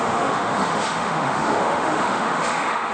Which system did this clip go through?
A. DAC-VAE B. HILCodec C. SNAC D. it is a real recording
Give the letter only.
A